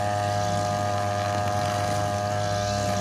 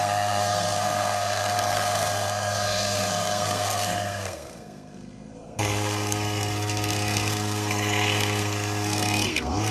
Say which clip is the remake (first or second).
second